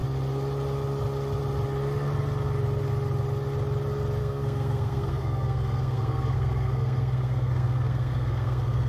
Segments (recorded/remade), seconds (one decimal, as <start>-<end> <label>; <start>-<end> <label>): 0.0-4.2 recorded; 4.2-8.9 remade